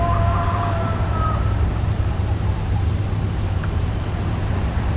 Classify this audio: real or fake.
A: fake